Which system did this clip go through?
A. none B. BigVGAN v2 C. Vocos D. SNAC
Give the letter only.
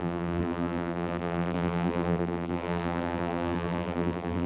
B